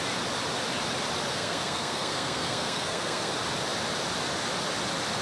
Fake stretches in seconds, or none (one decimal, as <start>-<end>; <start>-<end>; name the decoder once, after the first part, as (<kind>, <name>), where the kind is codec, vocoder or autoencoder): 1.3-3.3 (codec, SNAC)